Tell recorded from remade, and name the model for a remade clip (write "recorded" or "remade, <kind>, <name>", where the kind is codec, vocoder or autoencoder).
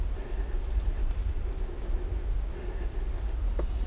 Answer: recorded